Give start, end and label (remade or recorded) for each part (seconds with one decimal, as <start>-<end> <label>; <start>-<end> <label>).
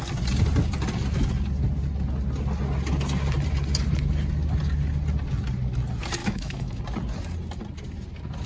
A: 0.0-6.2 recorded; 6.2-6.8 remade; 6.8-8.5 recorded